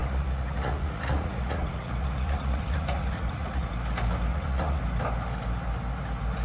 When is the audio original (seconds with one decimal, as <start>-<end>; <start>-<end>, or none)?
3.7-4.3; 4.8-6.4